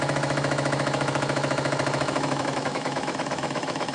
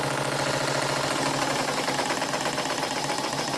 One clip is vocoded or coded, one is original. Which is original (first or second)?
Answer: second